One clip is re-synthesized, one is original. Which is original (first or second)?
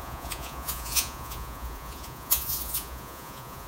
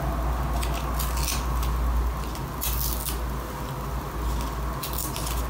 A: second